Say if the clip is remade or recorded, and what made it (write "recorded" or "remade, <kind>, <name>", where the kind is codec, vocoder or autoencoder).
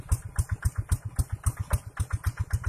recorded